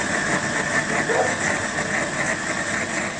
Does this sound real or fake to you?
real